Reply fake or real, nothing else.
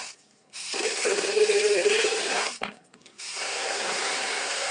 fake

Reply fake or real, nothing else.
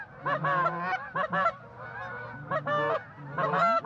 real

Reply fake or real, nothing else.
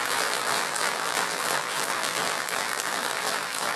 fake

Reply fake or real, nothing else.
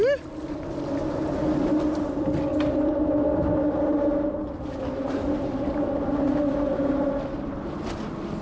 real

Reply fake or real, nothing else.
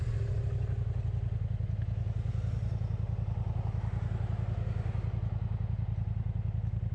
real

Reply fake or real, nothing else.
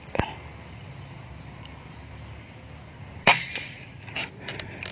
real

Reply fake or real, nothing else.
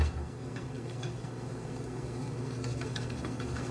fake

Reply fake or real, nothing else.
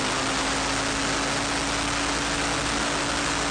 real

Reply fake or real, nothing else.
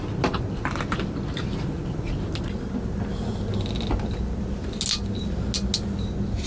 real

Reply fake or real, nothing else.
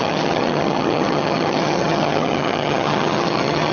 fake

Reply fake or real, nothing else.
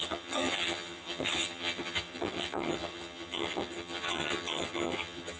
fake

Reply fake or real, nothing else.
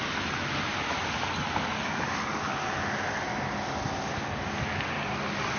real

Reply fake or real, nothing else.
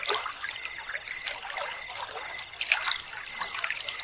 real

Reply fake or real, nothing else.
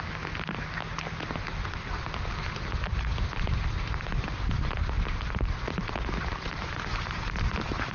real